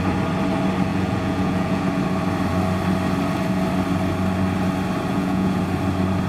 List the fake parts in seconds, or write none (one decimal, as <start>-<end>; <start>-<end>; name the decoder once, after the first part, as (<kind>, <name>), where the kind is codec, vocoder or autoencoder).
0.9-1.9 (vocoder, Vocos); 5.1-5.6

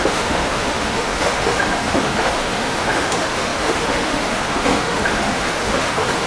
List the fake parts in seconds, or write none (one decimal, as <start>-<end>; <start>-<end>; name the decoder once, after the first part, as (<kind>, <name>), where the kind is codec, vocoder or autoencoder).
0.0-6.3 (autoencoder, DAC-VAE)

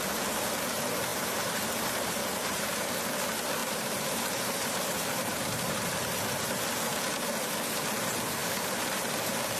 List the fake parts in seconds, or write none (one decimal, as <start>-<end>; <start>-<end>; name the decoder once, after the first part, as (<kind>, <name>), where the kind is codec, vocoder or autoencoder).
1.1-3.0 (vocoder, BigVGAN v2); 3.6-5.9; 8.4-9.1

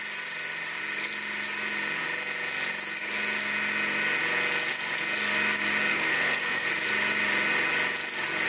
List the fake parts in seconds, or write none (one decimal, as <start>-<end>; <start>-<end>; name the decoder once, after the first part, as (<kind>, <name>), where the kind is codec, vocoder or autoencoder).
5.9-6.7 (codec, SNAC)

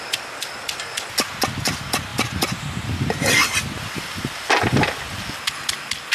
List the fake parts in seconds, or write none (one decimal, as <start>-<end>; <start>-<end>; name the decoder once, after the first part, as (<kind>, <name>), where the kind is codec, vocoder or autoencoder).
2.1-5.5 (vocoder, BigVGAN v2)

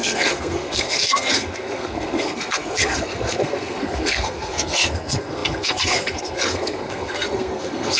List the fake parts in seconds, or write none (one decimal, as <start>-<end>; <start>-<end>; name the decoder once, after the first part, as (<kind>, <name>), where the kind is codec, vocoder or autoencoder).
0.0-8.0 (codec, SNAC)

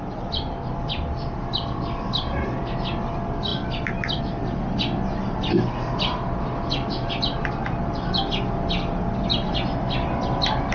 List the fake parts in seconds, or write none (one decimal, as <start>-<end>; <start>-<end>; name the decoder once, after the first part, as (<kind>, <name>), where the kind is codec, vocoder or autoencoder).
none

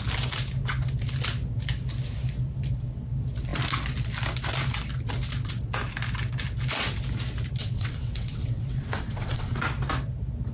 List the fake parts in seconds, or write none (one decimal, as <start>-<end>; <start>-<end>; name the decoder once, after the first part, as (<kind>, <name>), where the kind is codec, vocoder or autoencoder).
7.6-9.6 (vocoder, WaveNeXt)